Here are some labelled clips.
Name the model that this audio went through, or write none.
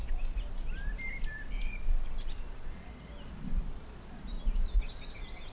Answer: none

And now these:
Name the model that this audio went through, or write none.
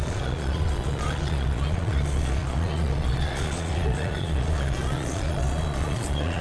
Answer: vocoder, Vocos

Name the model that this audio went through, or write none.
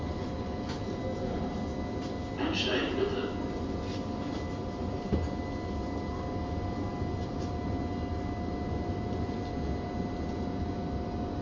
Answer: none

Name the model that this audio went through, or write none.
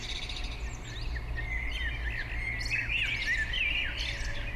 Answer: none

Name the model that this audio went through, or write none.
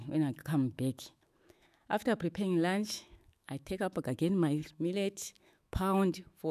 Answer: autoencoder, DAC-VAE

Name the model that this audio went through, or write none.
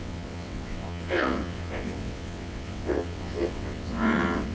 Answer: vocoder, WaveNeXt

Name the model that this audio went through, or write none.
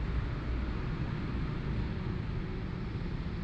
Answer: none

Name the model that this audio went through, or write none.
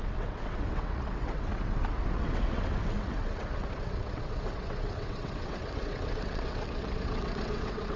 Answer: vocoder, WaveNeXt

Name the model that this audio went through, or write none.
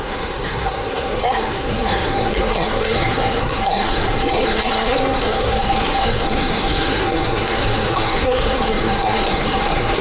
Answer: codec, SNAC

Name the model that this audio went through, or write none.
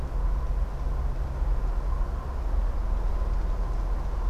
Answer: none